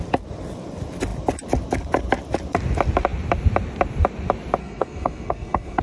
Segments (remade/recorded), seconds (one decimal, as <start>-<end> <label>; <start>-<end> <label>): 0.0-4.6 recorded; 4.6-5.8 remade